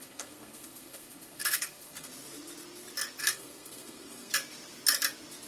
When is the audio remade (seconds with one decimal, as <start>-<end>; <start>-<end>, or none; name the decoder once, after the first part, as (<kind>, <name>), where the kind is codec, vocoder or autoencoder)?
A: 0.0-2.1 (codec, SNAC); 3.2-4.3